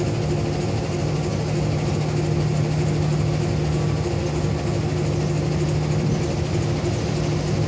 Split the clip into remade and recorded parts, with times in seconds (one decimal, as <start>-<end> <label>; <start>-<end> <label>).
0.0-7.7 recorded